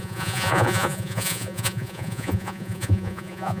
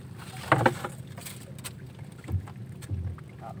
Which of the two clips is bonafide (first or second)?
second